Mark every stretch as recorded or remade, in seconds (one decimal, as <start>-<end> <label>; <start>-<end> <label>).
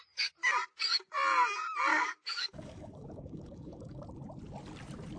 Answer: 0.0-1.9 recorded; 1.9-4.0 remade; 4.0-5.2 recorded